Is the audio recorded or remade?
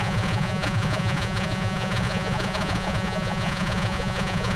remade